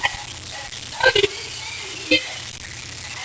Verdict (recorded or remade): recorded